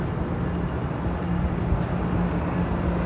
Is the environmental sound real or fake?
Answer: real